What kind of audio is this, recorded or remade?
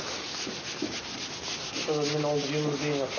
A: recorded